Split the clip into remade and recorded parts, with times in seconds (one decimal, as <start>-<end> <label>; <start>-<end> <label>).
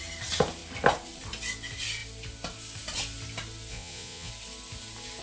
0.0-3.7 recorded; 3.7-4.3 remade; 4.3-5.2 recorded